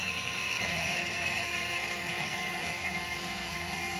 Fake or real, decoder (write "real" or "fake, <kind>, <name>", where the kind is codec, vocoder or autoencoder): fake, codec, SNAC